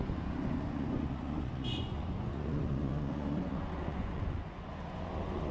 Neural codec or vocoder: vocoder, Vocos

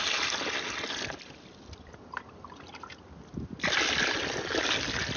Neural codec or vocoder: none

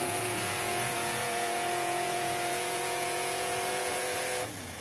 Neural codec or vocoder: vocoder, Vocos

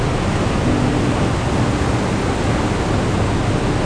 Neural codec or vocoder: none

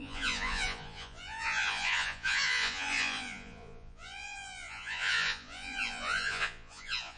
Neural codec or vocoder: vocoder, Vocos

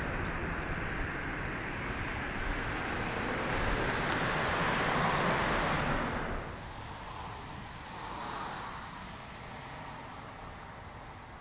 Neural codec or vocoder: none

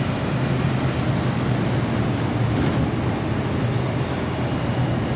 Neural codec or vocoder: none